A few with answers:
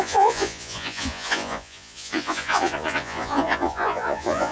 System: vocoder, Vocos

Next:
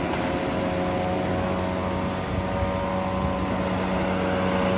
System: none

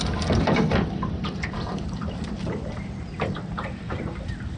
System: vocoder, BigVGAN v2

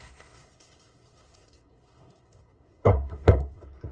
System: codec, SNAC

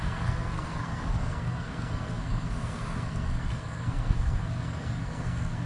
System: codec, SNAC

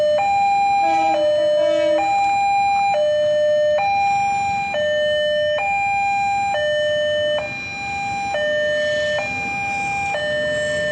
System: none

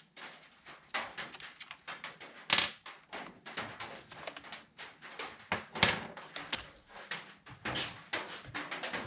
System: none